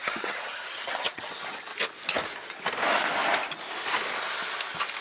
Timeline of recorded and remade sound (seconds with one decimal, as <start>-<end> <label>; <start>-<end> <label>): 0.0-1.7 remade; 1.7-5.0 recorded

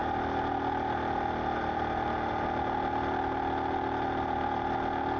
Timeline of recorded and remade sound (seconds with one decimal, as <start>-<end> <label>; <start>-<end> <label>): 0.0-5.2 recorded

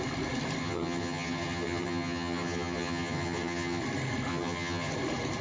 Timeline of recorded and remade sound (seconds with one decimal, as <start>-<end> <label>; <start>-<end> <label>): 0.0-0.6 recorded; 0.6-3.8 remade; 3.8-4.3 recorded; 4.3-4.9 remade; 4.9-5.4 recorded

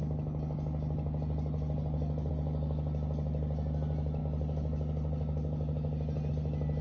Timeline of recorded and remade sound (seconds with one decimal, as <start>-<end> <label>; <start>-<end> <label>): 0.0-6.8 recorded

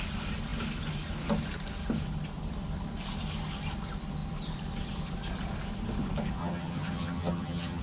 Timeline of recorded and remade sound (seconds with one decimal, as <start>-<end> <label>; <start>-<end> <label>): 0.0-6.4 recorded; 6.4-7.8 remade

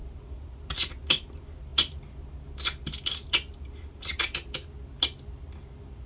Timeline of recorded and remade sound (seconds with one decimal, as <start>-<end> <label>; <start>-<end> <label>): 0.0-6.1 recorded

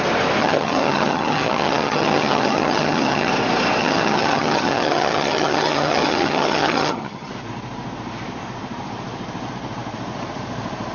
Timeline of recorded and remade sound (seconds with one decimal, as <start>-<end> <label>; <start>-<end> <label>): 0.0-0.4 recorded; 0.4-3.3 remade; 3.3-3.8 recorded; 3.8-7.3 remade; 7.3-10.9 recorded